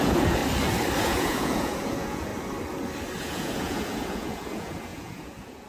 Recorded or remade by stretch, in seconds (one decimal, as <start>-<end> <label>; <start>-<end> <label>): 0.0-0.4 remade; 0.4-1.0 recorded; 1.0-2.3 remade; 2.3-3.2 recorded; 3.2-5.7 remade